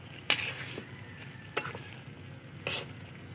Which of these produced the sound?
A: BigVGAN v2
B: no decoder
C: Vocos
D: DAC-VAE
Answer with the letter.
B